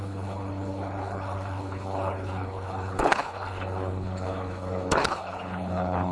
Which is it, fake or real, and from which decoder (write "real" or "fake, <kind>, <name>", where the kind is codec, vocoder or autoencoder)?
fake, codec, HILCodec